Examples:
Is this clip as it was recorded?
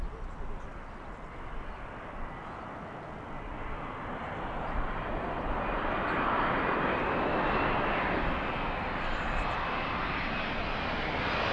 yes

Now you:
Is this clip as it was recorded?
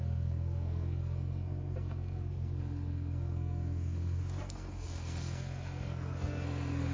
no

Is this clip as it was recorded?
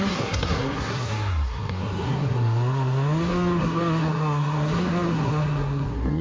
no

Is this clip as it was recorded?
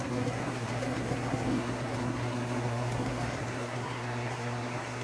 no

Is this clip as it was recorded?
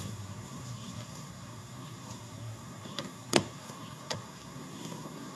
no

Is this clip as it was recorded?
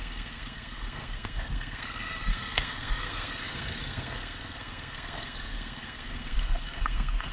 no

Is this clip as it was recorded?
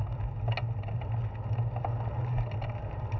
yes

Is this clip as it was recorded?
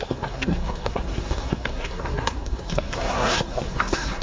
no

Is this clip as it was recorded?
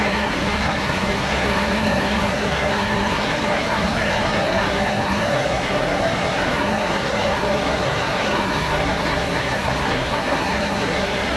no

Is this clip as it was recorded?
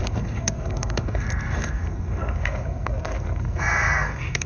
no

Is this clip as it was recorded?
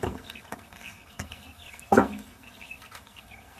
no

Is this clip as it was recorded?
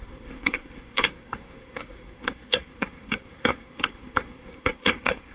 no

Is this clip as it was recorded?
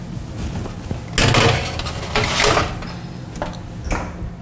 yes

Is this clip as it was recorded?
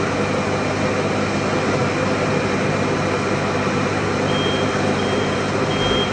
yes